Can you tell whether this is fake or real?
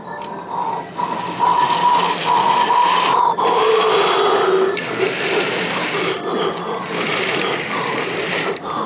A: real